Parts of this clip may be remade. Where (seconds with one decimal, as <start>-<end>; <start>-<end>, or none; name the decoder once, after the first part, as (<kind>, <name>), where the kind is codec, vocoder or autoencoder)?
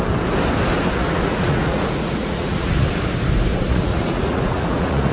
1.0-2.9 (vocoder, Vocos); 3.5-5.1